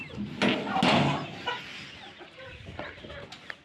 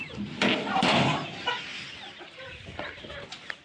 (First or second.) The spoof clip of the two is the second